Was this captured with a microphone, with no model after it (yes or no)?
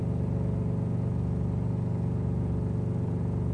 yes